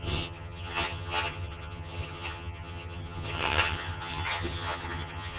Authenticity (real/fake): fake